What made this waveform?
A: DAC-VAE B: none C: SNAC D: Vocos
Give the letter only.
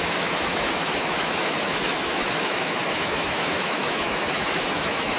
A